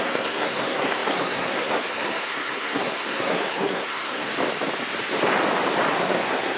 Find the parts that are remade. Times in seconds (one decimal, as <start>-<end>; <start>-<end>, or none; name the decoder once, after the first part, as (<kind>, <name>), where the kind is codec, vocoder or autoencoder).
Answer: 0.0-4.3 (codec, SNAC); 5.9-6.6